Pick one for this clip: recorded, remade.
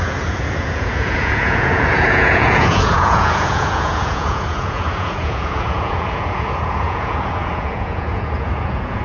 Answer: remade